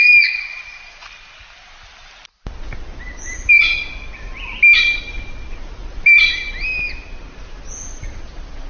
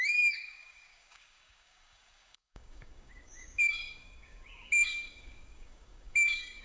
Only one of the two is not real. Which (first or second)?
second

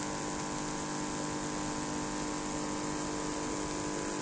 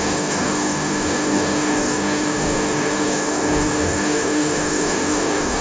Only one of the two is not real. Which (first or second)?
second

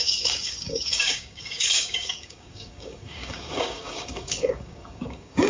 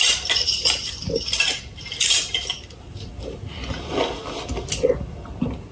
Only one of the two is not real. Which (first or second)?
first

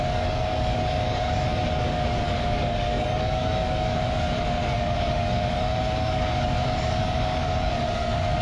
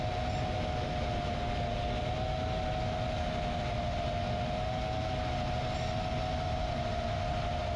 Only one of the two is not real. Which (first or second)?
first